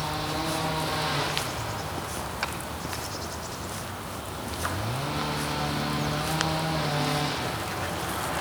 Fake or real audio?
real